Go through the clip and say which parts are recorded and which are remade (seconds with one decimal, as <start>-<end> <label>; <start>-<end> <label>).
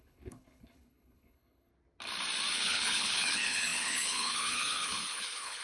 0.0-1.7 remade; 1.7-2.5 recorded; 2.5-5.6 remade